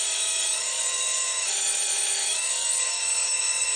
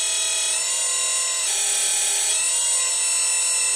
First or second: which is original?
second